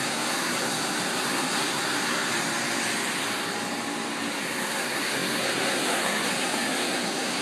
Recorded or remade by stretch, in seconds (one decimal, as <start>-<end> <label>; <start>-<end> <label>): 0.0-2.3 remade; 2.3-4.4 recorded; 4.4-7.4 remade